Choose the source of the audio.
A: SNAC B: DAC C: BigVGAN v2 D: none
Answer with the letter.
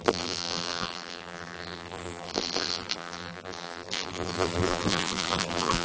C